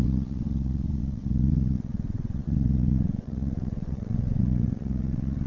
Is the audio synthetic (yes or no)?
yes